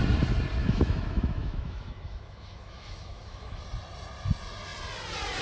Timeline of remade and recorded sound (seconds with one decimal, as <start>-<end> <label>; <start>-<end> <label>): 0.0-0.6 recorded; 0.6-3.6 remade; 3.6-5.4 recorded

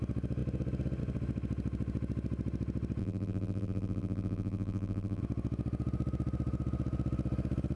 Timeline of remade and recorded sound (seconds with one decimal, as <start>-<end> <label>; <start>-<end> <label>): 0.0-3.0 recorded; 3.0-5.2 remade; 5.2-7.8 recorded

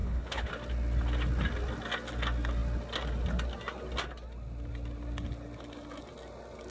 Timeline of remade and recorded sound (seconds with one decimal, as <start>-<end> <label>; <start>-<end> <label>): 0.0-0.5 remade; 0.5-6.7 recorded

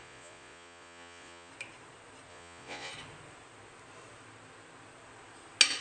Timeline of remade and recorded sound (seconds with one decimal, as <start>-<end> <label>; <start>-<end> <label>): 0.0-1.5 remade; 1.5-2.3 recorded; 2.3-2.9 remade; 2.9-5.8 recorded

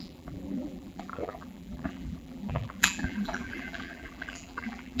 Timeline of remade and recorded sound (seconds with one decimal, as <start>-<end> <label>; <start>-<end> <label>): 0.0-5.0 remade